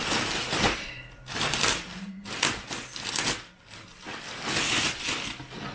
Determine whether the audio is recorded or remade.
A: recorded